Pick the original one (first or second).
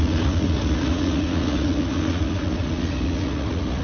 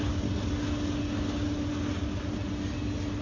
second